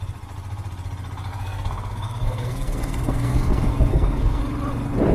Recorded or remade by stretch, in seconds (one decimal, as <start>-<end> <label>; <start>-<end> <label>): 0.0-1.3 recorded; 1.3-4.4 remade; 4.4-5.1 recorded